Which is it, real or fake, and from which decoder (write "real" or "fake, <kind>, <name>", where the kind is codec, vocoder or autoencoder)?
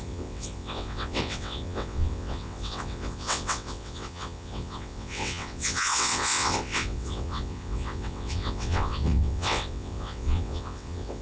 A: fake, vocoder, WaveNeXt